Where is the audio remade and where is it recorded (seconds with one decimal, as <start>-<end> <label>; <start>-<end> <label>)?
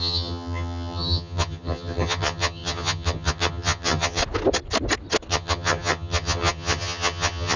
0.0-4.2 remade; 4.2-5.3 recorded; 5.3-7.6 remade